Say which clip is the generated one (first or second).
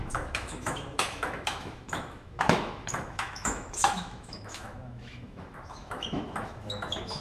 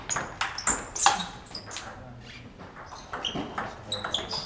first